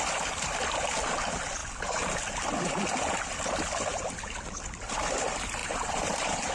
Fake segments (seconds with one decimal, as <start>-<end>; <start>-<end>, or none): 5.6-6.5